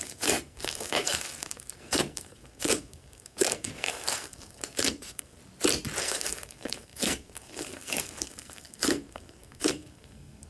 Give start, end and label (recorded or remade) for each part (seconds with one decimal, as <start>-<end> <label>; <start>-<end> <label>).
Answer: 0.0-5.4 remade; 5.4-6.0 recorded; 6.0-10.5 remade